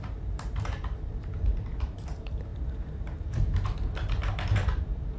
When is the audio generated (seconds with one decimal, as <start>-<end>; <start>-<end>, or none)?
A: 0.0-5.2